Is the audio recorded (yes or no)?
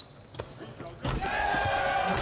yes